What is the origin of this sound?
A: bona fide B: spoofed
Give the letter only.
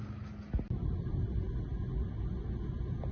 A